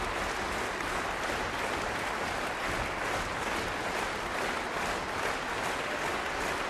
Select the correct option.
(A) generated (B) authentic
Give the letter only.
B